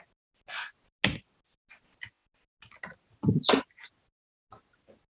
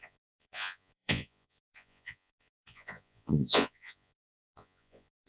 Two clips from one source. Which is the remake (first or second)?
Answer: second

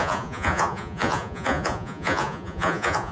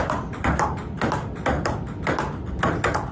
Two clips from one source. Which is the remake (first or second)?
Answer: first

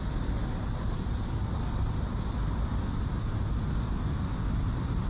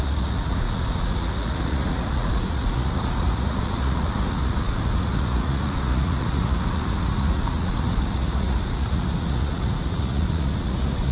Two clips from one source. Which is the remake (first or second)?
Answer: second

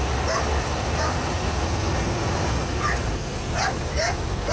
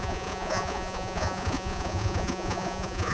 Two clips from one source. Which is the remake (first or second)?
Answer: second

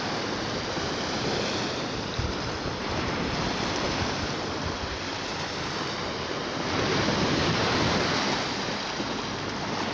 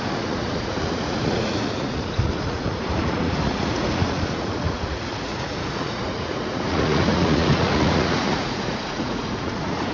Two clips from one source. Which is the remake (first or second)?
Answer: second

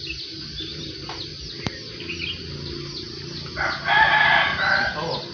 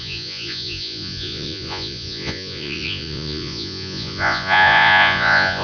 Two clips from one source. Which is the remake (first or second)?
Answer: second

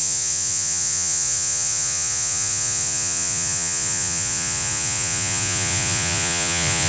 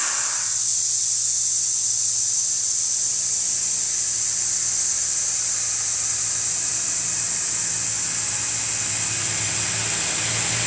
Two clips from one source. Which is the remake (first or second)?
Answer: first